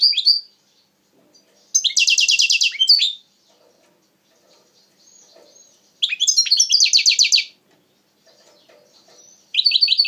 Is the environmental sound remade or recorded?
recorded